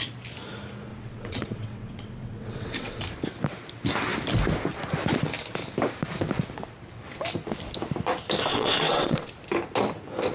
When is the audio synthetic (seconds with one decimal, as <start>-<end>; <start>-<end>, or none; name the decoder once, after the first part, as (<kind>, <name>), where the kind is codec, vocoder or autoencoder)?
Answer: 0.9-3.0 (vocoder, WaveNeXt); 8.5-9.3